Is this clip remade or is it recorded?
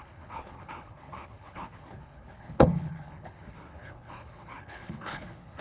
remade